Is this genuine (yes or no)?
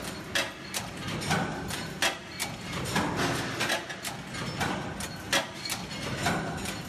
yes